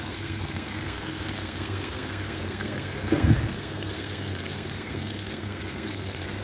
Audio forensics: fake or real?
fake